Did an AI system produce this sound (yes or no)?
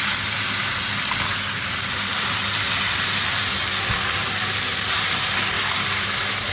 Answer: no